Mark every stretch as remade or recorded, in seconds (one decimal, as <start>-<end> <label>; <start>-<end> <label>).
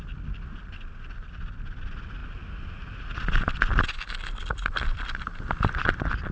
0.0-6.3 recorded